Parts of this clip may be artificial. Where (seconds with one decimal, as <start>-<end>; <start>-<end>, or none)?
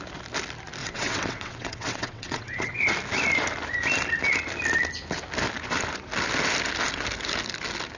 0.8-2.8